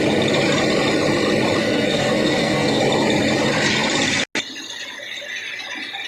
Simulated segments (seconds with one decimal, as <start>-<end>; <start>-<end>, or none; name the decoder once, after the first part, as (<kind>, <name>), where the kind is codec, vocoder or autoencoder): 1.6-2.8 (codec, SNAC)